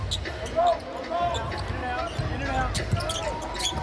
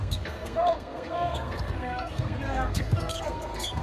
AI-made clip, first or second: second